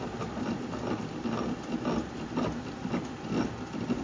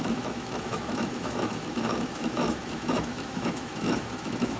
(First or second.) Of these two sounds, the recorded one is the first